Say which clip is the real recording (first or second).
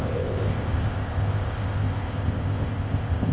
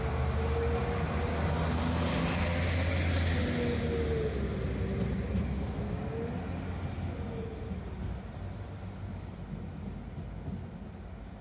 second